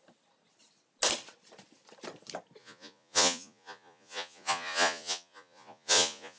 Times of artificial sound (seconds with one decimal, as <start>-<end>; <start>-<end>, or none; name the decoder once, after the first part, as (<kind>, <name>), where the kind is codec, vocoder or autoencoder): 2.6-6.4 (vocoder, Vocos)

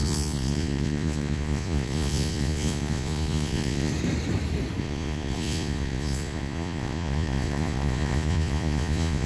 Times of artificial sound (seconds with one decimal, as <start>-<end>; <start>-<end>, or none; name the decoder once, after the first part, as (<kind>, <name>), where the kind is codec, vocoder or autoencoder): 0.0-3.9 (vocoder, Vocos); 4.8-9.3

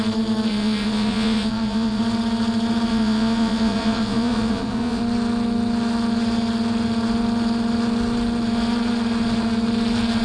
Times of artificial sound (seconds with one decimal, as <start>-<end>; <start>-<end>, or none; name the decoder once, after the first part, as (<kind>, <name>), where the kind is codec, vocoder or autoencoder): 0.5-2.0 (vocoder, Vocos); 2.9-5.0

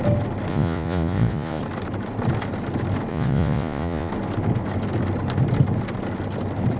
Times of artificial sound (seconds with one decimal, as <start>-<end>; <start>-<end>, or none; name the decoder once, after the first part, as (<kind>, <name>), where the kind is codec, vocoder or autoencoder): 0.5-1.6 (vocoder, Vocos); 3.1-4.1

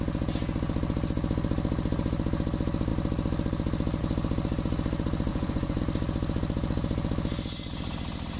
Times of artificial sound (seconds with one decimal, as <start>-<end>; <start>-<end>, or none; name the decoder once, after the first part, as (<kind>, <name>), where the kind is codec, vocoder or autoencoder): 5.3-5.8 (vocoder, Vocos)

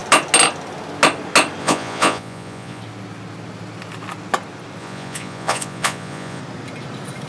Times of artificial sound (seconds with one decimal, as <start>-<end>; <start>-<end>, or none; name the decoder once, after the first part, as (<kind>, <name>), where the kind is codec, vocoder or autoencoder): 1.6-2.8 (vocoder, Vocos); 4.8-6.4

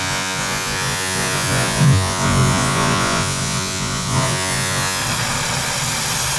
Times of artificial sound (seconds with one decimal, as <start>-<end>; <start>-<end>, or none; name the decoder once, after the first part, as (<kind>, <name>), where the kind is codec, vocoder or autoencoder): 0.0-5.0 (vocoder, Vocos)

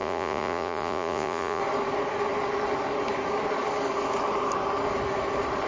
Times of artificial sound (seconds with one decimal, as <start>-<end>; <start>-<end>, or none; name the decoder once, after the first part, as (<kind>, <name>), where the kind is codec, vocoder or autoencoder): 0.0-1.6 (vocoder, Vocos)